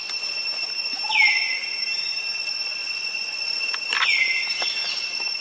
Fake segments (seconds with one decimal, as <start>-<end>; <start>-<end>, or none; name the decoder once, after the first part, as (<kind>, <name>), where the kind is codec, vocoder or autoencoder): 2.8-3.7 (vocoder, Vocos)